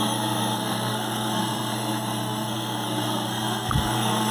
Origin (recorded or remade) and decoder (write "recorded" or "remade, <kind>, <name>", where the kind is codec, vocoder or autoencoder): remade, codec, SNAC